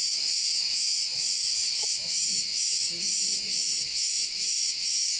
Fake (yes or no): yes